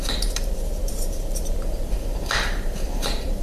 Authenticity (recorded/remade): remade